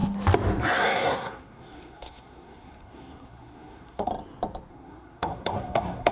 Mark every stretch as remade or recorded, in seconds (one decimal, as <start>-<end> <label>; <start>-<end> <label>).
0.0-0.6 recorded; 0.6-4.1 remade; 4.1-4.7 recorded; 4.7-6.1 remade